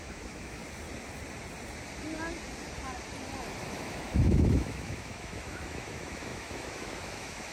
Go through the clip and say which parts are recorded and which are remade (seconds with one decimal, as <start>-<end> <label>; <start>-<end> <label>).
0.0-0.6 remade; 0.6-3.7 recorded; 3.7-7.5 remade